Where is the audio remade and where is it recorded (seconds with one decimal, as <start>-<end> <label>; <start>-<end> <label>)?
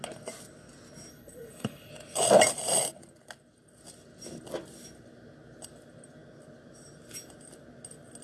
0.0-1.1 recorded; 1.1-1.9 remade; 1.9-8.2 recorded